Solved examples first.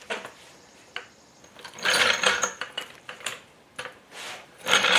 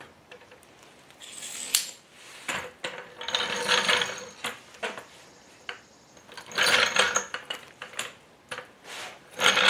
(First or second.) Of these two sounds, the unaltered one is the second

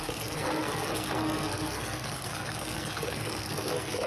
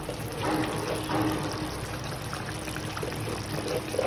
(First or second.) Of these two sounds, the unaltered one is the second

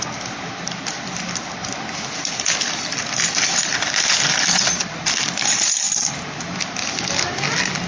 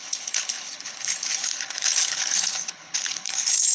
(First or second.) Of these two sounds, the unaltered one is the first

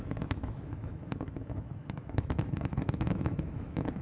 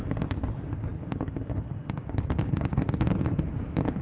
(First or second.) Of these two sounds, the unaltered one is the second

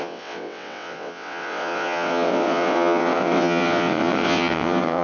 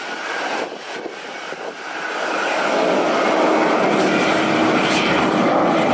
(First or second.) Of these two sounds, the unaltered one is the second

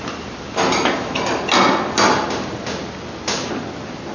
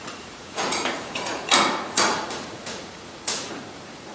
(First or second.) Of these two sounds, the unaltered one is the first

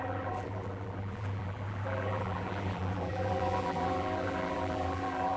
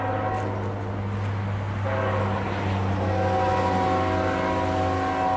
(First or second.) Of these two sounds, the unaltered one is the second